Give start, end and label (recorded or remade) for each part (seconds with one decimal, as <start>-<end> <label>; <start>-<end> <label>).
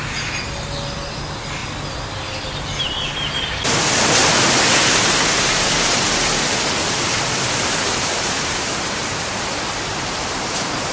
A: 0.0-4.2 recorded; 4.2-9.3 remade; 9.3-9.9 recorded; 9.9-10.9 remade